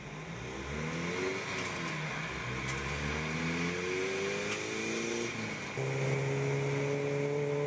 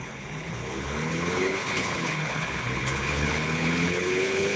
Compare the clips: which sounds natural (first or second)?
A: first